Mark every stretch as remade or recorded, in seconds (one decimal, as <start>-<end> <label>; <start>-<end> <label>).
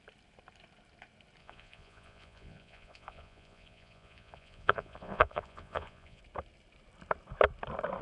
0.0-1.4 recorded; 1.4-6.2 remade; 6.2-8.0 recorded